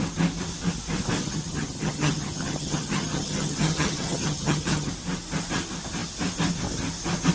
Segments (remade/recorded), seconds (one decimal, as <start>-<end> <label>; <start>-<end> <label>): 0.0-1.2 recorded; 1.2-4.9 remade; 4.9-7.3 recorded